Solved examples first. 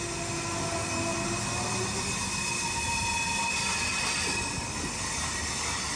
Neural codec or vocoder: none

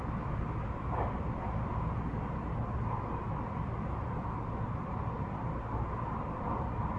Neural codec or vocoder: none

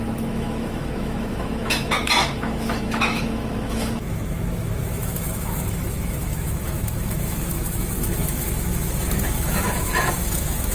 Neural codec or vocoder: autoencoder, DAC-VAE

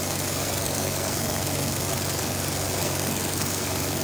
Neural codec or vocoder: codec, SNAC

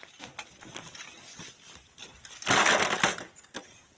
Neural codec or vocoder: none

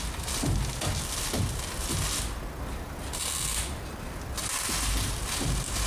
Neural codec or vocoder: none